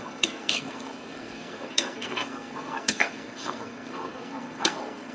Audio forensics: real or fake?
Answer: fake